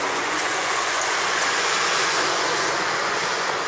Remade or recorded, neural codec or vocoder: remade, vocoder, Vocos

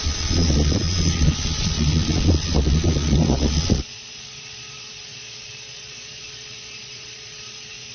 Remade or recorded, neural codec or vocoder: remade, vocoder, Vocos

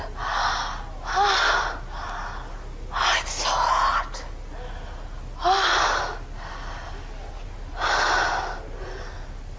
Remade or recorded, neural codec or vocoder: recorded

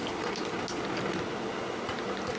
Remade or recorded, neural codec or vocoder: recorded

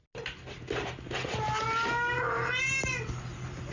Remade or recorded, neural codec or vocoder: recorded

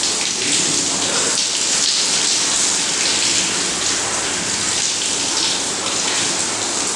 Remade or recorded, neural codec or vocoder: recorded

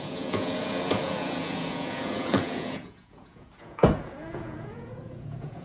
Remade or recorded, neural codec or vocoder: remade, vocoder, Vocos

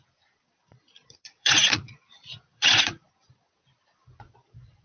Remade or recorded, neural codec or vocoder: remade, vocoder, Vocos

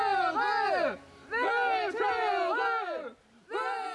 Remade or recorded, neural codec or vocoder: recorded